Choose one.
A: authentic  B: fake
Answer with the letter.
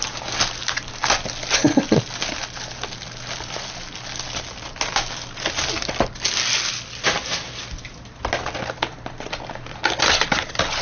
A